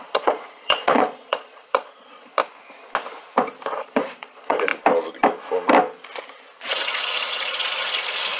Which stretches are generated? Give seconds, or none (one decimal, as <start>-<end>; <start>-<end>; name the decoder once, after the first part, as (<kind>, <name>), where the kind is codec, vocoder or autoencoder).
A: 0.0-2.4 (vocoder, Vocos); 3.8-4.7; 6.6-8.4